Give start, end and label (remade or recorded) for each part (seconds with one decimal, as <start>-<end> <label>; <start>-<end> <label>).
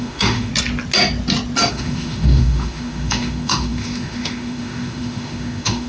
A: 0.0-0.5 remade; 0.5-1.7 recorded; 1.7-5.9 remade